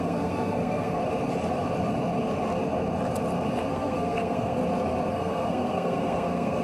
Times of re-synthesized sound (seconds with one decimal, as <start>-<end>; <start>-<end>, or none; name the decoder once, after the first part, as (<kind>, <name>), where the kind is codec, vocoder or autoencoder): 0.0-1.0 (codec, SNAC); 3.7-4.6; 5.1-6.6